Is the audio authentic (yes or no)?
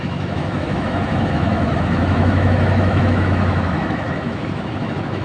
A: no